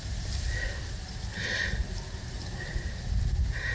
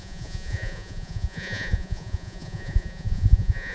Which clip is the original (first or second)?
first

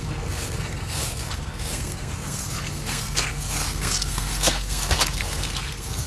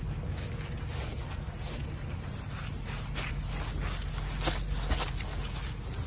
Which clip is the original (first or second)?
second